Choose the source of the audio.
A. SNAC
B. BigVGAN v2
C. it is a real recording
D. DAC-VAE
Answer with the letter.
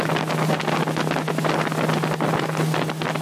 C